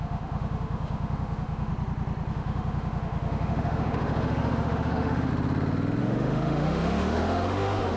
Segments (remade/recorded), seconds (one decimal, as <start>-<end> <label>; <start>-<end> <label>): 0.0-1.7 remade; 1.7-2.3 recorded; 2.3-5.3 remade; 5.3-6.0 recorded; 6.0-8.0 remade